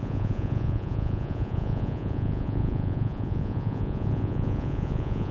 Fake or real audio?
fake